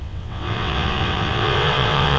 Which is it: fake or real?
fake